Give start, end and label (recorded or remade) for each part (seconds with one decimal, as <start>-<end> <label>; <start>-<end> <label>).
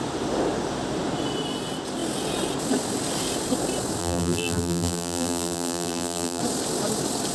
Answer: 0.0-4.0 recorded; 4.0-6.4 remade; 6.4-7.3 recorded